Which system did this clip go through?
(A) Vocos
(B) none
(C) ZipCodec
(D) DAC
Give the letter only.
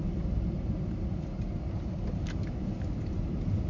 B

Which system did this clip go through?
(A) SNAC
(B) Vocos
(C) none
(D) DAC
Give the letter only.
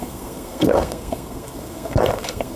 A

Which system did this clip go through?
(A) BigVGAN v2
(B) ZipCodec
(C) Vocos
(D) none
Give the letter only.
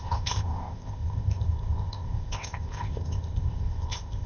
B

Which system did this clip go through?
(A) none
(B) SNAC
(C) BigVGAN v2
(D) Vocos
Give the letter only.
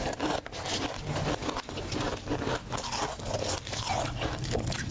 A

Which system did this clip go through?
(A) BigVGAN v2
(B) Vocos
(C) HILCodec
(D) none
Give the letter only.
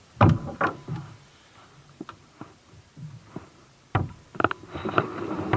A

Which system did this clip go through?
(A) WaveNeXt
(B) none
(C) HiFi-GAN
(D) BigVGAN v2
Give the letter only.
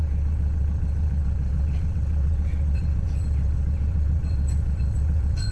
A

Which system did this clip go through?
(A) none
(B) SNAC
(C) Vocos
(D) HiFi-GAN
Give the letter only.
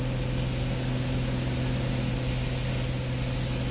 A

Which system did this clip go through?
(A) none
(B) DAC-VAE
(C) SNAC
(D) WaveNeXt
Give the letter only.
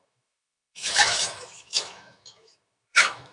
B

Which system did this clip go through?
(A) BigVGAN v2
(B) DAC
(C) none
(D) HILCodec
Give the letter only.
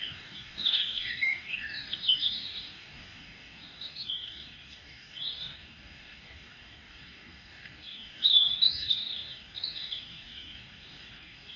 B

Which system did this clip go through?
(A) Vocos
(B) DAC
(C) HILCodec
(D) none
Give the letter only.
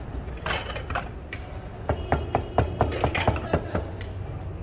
D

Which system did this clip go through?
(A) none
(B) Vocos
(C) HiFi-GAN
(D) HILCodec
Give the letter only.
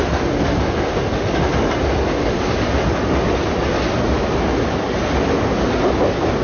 A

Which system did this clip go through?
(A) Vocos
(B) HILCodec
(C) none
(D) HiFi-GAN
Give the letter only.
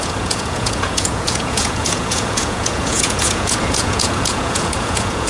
A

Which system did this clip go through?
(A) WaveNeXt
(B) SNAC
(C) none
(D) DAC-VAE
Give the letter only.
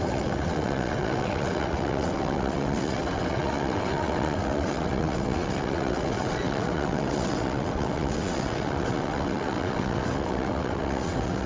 A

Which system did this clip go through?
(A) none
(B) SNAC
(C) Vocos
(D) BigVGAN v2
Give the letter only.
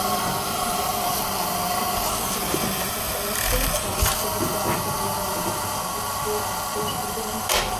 A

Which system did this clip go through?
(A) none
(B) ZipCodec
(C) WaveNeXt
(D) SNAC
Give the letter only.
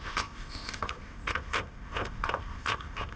B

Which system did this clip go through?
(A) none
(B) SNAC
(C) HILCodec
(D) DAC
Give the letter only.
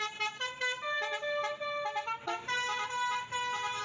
A